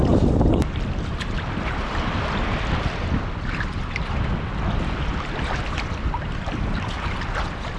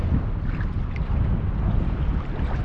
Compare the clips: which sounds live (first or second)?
second